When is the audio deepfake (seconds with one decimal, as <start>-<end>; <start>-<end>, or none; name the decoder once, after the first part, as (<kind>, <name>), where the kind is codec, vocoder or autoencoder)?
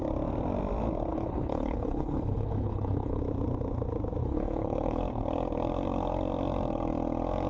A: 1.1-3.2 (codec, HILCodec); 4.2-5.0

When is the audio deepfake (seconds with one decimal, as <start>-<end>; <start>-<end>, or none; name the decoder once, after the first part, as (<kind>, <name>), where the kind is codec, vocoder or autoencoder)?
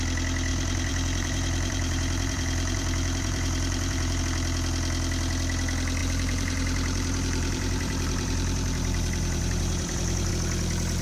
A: 0.5-4.2 (vocoder, BigVGAN v2); 6.0-10.3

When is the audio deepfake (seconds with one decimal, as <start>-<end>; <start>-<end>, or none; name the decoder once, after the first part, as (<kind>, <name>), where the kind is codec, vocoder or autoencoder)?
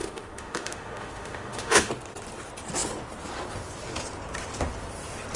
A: 0.0-1.9 (autoencoder, DAC-VAE)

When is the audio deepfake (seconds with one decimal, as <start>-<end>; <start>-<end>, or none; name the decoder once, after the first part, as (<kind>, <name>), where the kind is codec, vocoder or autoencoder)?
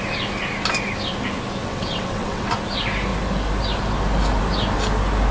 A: 1.6-2.5 (vocoder, WaveNeXt)